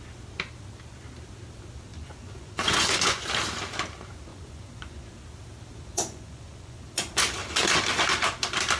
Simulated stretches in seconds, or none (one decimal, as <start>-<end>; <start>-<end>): 1.9-3.3; 4.3-5.1; 5.7-7.3